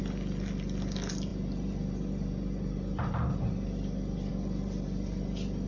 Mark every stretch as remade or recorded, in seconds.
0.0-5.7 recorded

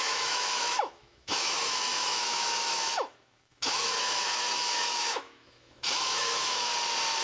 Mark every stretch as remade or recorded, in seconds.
0.0-6.7 remade; 6.7-7.2 recorded

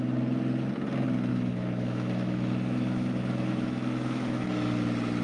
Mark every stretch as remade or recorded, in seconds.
0.0-1.3 recorded; 1.3-4.4 remade; 4.4-5.2 recorded

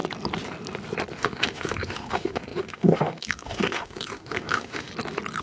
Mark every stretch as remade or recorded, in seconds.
0.0-1.1 recorded; 1.1-4.9 remade; 4.9-5.4 recorded